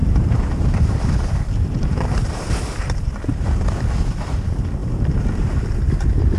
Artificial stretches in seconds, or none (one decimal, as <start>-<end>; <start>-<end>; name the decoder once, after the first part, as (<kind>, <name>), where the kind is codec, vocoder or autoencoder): 0.0-3.8 (vocoder, BigVGAN v2)